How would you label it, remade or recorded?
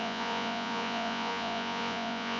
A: remade